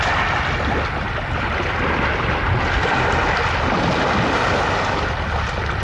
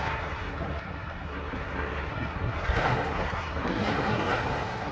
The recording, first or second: first